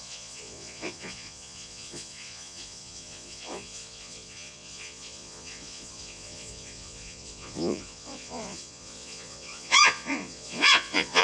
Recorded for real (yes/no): no